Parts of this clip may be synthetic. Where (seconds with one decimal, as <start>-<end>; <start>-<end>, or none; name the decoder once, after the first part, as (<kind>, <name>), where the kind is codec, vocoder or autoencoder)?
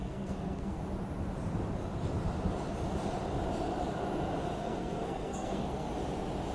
0.0-0.8 (codec, SNAC); 4.6-5.9